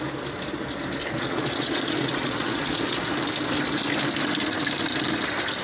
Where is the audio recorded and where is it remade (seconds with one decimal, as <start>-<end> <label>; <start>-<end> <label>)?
0.0-1.0 recorded; 1.0-3.1 remade; 3.1-5.6 recorded